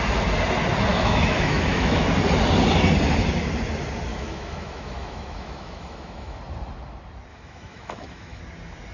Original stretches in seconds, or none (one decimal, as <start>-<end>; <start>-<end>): 0.0-0.9; 2.1-4.1; 6.4-7.3; 8.4-8.9

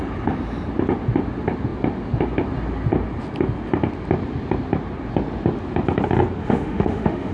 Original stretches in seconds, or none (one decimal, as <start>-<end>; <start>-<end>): 0.0-6.4

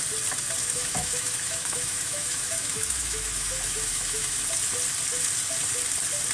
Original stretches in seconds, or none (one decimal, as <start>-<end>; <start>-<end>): 0.0-0.6; 4.4-6.3

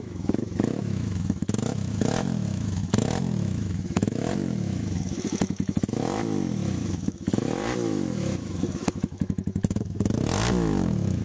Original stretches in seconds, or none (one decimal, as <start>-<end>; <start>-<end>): none

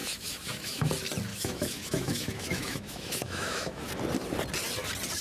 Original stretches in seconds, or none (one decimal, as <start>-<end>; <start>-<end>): 0.9-1.3; 3.9-5.2

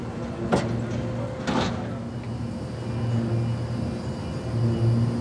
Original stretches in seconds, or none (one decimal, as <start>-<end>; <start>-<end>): 0.0-5.2

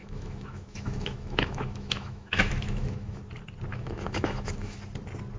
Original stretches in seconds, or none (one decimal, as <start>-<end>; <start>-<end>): 3.2-3.7; 4.8-5.4